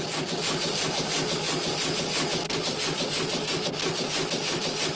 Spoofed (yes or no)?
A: no